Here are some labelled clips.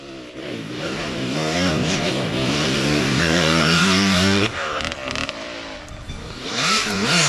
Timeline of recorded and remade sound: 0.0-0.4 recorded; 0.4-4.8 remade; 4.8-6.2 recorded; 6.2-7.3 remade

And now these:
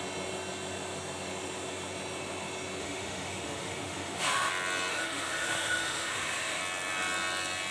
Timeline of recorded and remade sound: 0.0-2.8 recorded; 2.8-4.5 remade; 4.5-4.9 recorded; 4.9-6.6 remade; 6.6-7.7 recorded